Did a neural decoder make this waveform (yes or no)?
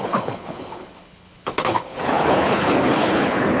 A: yes